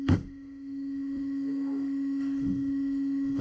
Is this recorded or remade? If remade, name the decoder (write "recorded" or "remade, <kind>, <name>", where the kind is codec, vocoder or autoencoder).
remade, autoencoder, DAC-VAE